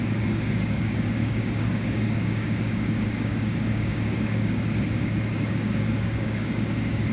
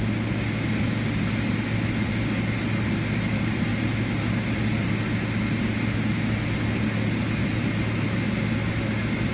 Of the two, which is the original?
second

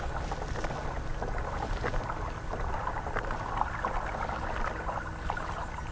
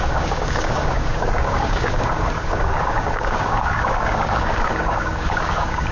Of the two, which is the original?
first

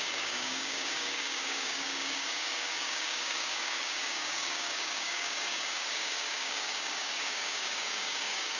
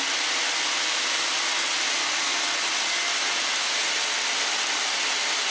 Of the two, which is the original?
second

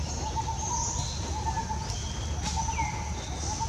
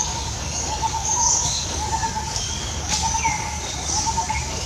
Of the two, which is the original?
first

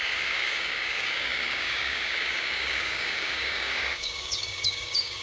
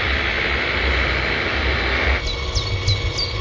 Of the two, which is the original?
second